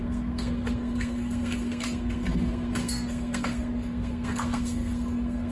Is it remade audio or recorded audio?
remade